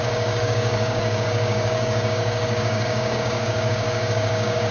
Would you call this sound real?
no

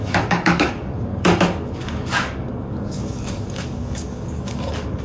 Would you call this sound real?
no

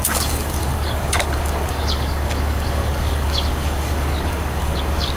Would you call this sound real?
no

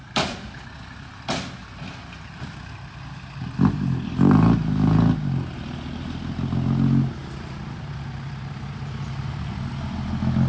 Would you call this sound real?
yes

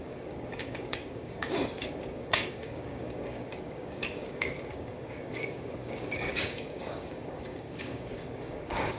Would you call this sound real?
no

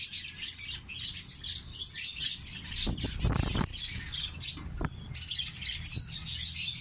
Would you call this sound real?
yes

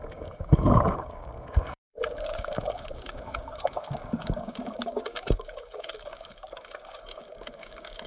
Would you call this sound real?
no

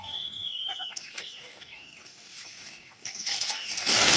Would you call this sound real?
no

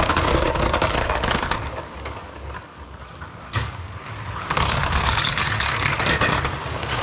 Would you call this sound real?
no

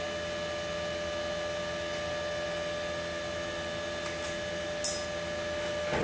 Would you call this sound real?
yes